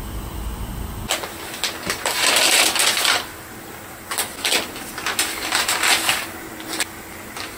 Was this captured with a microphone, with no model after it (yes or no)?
yes